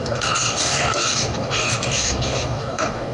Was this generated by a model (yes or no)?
yes